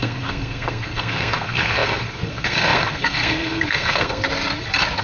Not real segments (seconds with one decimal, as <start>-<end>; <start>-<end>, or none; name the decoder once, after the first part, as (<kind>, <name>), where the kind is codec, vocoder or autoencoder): 0.0-4.2 (codec, SNAC)